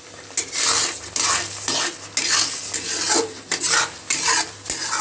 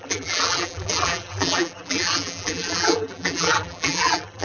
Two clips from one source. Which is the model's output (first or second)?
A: second